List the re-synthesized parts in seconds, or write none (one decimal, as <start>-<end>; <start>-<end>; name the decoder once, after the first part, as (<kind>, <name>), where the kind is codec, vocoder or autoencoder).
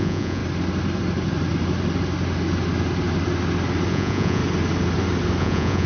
0.0-0.4 (vocoder, Vocos); 3.9-4.4; 5.4-5.9